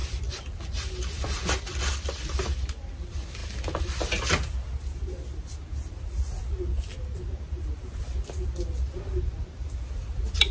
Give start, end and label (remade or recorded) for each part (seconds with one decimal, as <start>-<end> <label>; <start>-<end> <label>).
0.0-10.5 recorded